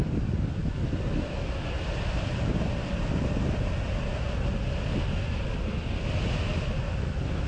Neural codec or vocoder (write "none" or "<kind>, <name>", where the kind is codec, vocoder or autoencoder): none